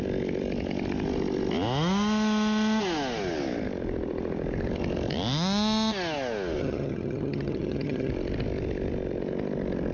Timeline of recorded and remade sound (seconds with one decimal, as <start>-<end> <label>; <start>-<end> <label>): 0.0-6.6 recorded; 6.6-8.1 remade; 8.1-9.9 recorded